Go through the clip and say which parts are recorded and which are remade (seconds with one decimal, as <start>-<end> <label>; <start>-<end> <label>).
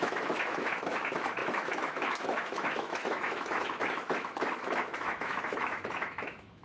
0.0-6.6 remade